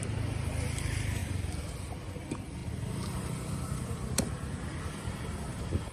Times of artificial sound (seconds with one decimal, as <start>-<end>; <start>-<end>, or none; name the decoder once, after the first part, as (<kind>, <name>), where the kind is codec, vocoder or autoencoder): 0.0-1.2 (vocoder, BigVGAN v2); 1.8-5.9

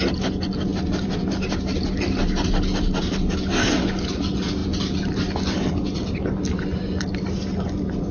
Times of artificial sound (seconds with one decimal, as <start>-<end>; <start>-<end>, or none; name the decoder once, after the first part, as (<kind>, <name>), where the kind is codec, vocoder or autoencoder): none

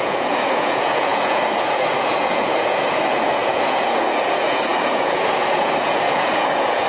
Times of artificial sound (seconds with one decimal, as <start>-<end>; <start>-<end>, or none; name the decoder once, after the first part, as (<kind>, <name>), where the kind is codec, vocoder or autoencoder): 0.0-6.9 (vocoder, Vocos)

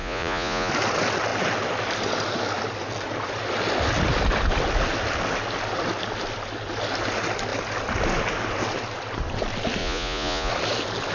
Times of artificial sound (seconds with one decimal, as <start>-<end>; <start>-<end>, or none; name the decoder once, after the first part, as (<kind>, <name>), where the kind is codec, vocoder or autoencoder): 0.0-0.7 (vocoder, Vocos); 9.8-10.5

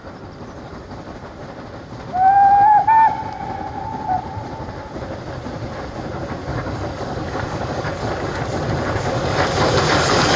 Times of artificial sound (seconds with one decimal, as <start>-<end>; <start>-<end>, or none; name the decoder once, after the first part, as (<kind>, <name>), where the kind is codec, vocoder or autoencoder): 6.5-7.9 (codec, DAC)